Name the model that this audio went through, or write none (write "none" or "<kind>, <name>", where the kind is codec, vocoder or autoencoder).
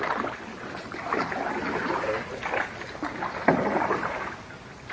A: none